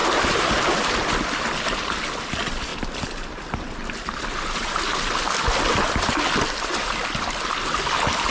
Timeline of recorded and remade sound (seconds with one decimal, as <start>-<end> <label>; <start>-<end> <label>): 0.0-8.3 recorded